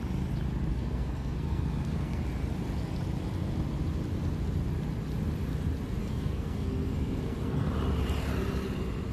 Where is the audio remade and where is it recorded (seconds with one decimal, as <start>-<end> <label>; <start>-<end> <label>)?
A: 0.0-0.7 recorded; 0.7-2.2 remade; 2.2-6.0 recorded; 6.0-7.7 remade; 7.7-9.1 recorded